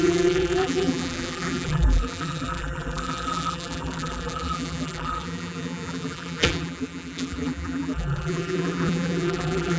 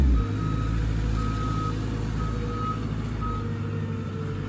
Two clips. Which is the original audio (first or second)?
second